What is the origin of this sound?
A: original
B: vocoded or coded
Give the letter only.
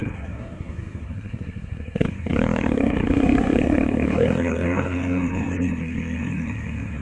B